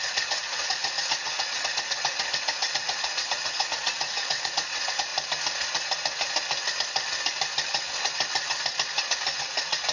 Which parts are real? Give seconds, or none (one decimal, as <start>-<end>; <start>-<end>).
5.1-9.4